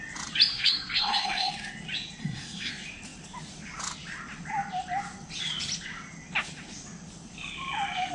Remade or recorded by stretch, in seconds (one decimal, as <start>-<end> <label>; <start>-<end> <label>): 0.0-0.5 recorded; 0.5-1.5 remade; 1.5-2.2 recorded; 2.2-2.7 remade; 2.7-8.1 recorded

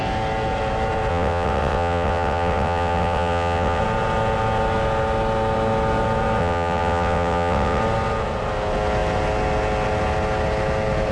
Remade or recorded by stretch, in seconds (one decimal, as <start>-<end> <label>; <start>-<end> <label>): 0.0-1.1 recorded; 1.1-3.8 remade; 3.8-6.4 recorded; 6.4-7.8 remade; 7.8-11.1 recorded

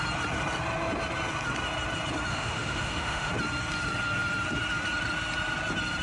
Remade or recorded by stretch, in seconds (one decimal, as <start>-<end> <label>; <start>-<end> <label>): 0.0-2.3 recorded; 2.3-3.3 remade; 3.3-6.0 recorded

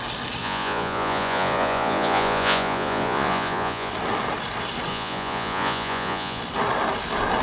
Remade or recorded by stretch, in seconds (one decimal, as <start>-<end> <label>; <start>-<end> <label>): 0.0-0.4 recorded; 0.4-3.9 remade; 3.9-4.9 recorded; 4.9-6.4 remade; 6.4-7.4 recorded

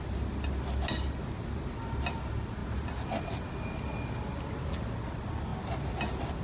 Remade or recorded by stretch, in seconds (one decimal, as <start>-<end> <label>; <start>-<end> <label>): 0.0-6.4 recorded

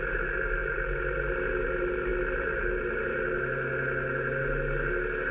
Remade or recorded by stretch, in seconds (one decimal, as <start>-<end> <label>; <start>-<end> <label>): 0.0-5.3 recorded

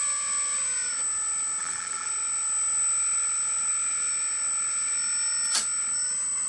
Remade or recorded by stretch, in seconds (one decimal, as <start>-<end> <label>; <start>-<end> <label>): 0.0-1.6 recorded; 1.6-2.1 remade; 2.1-6.5 recorded

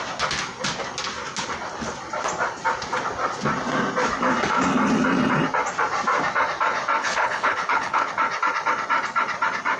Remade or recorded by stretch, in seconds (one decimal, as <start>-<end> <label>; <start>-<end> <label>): 0.0-7.0 recorded; 7.0-8.1 remade; 8.1-9.8 recorded